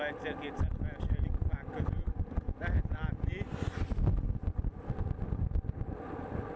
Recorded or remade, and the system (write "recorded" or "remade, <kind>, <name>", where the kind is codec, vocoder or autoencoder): recorded